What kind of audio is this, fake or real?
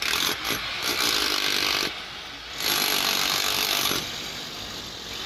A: real